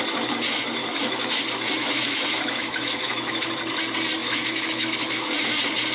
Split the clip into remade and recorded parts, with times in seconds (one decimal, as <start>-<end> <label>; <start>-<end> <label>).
0.0-0.8 recorded; 0.8-1.4 remade; 1.4-1.8 recorded; 1.8-3.5 remade; 3.5-4.2 recorded; 4.2-5.3 remade; 5.3-5.9 recorded